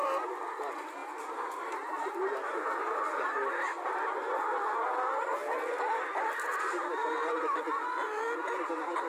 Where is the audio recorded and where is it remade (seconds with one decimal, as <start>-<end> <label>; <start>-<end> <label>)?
0.0-9.1 recorded